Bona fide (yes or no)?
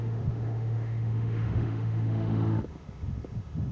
no